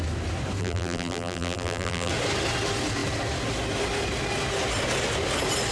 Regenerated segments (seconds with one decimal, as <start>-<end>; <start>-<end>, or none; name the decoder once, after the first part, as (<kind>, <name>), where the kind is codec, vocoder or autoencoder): 0.6-2.1 (vocoder, BigVGAN v2)